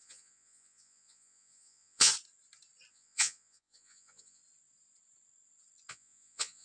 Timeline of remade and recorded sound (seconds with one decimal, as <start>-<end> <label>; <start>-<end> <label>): 0.0-2.1 remade; 2.1-2.9 recorded; 2.9-4.4 remade; 4.4-5.9 recorded; 5.9-6.6 remade